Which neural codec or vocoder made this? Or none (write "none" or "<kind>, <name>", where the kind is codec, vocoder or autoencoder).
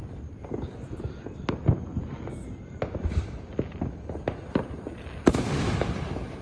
none